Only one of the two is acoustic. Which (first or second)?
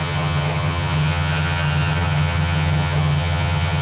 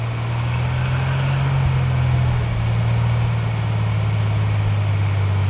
second